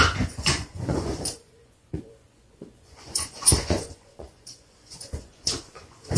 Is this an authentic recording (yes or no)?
no